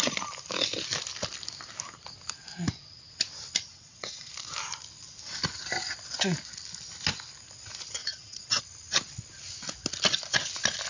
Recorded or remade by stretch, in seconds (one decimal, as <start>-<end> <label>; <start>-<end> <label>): 0.0-3.7 recorded; 3.7-4.3 remade; 4.3-8.0 recorded; 8.0-8.6 remade; 8.6-10.9 recorded